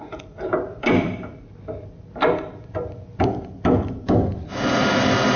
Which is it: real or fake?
real